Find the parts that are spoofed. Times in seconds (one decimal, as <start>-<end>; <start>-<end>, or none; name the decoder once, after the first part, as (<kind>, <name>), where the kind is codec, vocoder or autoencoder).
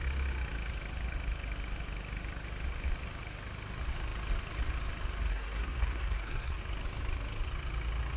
5.3-6.6 (codec, SNAC)